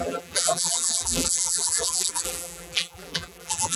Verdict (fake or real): fake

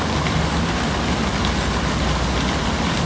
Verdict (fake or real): real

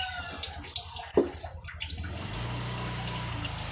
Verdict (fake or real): real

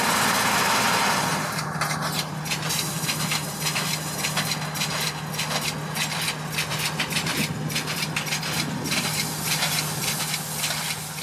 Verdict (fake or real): real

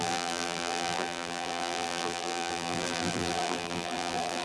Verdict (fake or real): fake